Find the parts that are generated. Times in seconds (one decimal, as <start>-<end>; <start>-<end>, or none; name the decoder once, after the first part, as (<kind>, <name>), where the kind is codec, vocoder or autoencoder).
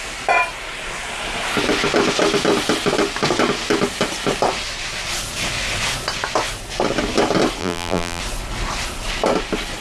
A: 7.6-8.2 (vocoder, BigVGAN v2)